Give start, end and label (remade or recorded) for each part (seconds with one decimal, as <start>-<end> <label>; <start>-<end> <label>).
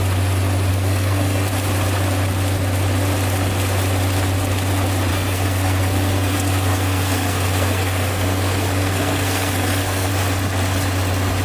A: 0.0-0.7 recorded; 0.7-1.5 remade; 1.5-5.1 recorded; 5.1-10.1 remade; 10.1-11.4 recorded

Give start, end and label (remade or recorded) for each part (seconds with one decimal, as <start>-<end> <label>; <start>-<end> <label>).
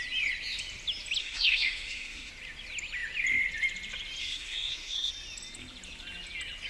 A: 0.0-1.2 recorded; 1.2-2.3 remade; 2.3-4.2 recorded; 4.2-5.1 remade; 5.1-6.7 recorded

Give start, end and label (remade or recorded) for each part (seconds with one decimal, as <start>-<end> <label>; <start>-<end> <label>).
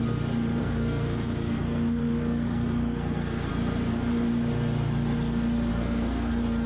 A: 0.0-0.6 recorded; 0.6-3.5 remade; 3.5-5.7 recorded; 5.7-6.3 remade; 6.3-6.7 recorded